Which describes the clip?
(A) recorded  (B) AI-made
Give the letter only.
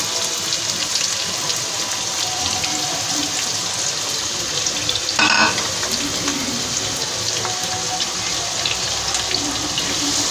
A